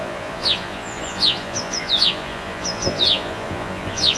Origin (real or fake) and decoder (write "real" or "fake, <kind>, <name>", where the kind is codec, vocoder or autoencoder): fake, vocoder, Vocos